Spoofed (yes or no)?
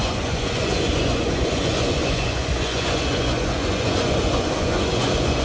yes